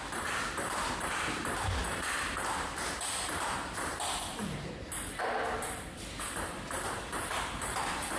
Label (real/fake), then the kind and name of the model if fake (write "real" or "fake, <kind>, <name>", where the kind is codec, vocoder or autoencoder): fake, vocoder, BigVGAN v2